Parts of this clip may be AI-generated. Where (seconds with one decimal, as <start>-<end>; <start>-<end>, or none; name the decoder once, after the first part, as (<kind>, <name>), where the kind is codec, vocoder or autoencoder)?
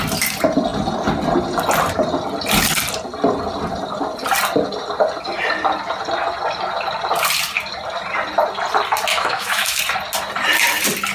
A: 9.1-9.8 (autoencoder, DAC-VAE)